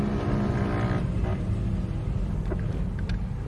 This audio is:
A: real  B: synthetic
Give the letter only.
A